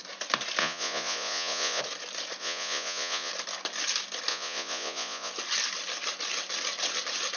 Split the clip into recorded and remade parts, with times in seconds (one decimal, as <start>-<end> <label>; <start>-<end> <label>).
0.0-0.6 recorded; 0.6-1.8 remade; 1.8-2.4 recorded; 2.4-3.3 remade; 3.3-4.3 recorded; 4.3-5.3 remade; 5.3-7.4 recorded